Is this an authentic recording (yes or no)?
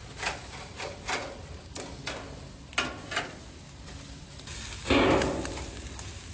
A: yes